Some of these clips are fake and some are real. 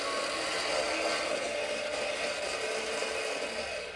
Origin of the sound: real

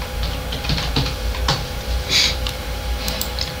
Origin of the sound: fake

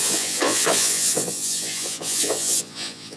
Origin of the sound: fake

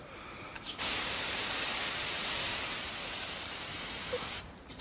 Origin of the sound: fake